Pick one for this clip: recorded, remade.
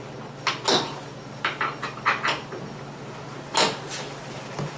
recorded